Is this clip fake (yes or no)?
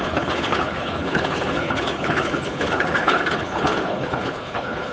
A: yes